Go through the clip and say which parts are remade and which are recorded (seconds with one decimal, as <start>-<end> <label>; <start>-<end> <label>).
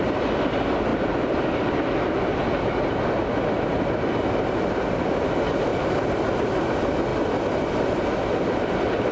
0.0-9.1 recorded